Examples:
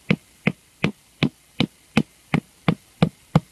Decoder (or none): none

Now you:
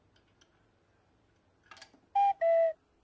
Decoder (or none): none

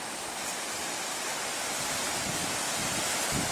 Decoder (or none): none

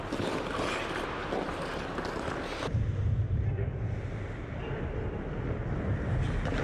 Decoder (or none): none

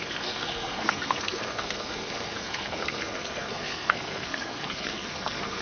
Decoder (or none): codec, SNAC